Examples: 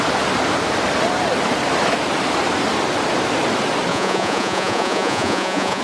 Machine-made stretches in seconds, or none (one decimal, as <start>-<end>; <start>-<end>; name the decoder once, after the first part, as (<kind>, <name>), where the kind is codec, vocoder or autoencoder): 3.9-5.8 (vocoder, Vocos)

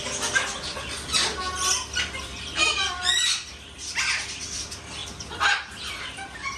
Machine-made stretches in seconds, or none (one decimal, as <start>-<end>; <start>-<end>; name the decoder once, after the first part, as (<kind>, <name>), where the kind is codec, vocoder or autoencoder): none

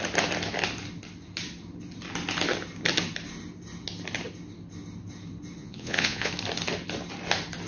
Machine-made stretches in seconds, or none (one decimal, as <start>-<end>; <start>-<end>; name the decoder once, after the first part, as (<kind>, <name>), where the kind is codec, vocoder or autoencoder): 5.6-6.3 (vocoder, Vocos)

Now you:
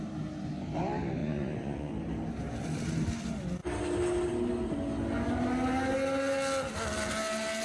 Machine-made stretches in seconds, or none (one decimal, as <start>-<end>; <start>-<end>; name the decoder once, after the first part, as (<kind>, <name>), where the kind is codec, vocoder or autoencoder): 1.2-1.9 (vocoder, Vocos)

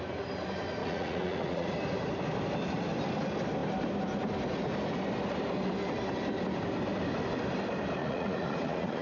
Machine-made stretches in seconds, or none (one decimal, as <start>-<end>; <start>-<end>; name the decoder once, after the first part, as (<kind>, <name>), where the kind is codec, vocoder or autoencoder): 0.8-1.7 (vocoder, Vocos); 8.0-9.0

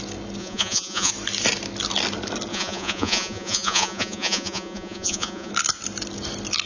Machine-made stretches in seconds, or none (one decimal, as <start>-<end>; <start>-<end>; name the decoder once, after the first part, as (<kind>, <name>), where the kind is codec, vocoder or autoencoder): 0.4-1.1 (vocoder, Vocos); 2.5-5.5

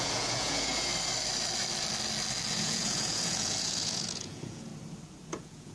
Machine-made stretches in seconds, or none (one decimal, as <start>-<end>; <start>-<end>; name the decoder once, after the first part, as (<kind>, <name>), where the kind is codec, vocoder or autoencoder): 0.0-0.9 (vocoder, Vocos); 2.5-4.7; 5.3-5.7